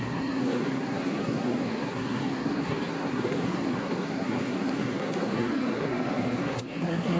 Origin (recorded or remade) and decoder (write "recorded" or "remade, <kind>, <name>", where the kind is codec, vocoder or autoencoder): remade, codec, SNAC